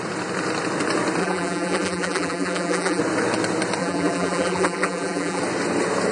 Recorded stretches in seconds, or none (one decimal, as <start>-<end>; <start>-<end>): 0.0-1.2; 3.0-3.8; 5.4-6.1

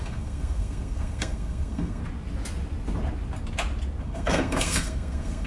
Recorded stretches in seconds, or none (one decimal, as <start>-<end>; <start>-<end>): 2.0-4.0